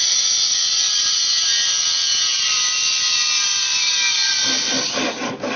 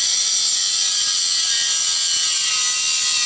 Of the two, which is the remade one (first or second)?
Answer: first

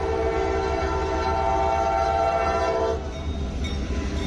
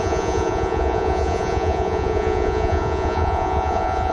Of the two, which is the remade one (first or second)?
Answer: second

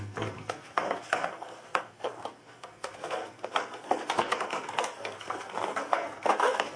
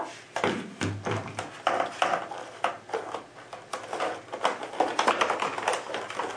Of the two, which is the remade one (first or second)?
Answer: first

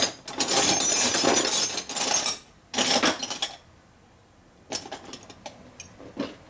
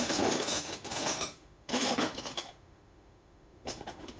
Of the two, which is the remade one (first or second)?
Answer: second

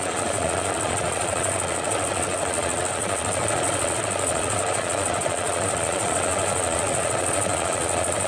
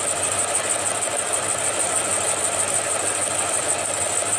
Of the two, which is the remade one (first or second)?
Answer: first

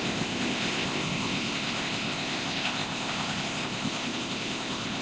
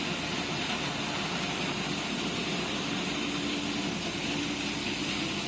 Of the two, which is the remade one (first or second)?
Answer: first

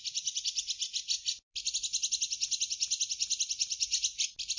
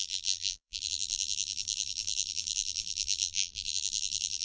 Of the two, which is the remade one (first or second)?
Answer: second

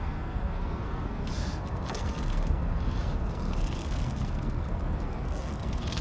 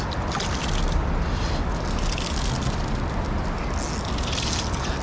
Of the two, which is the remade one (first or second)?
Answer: first